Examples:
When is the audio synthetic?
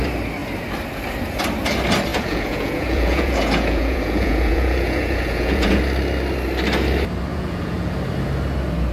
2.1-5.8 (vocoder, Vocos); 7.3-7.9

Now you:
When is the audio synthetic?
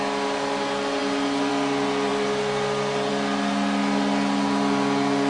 none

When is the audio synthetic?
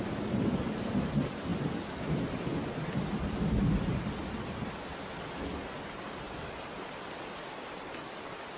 none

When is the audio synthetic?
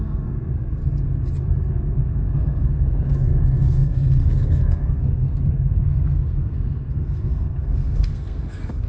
0.0-0.8 (codec, SNAC); 1.7-8.9